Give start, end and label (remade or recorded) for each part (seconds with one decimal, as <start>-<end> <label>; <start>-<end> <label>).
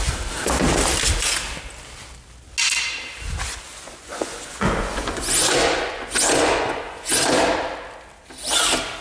0.0-3.7 recorded; 3.7-7.1 remade; 7.1-9.0 recorded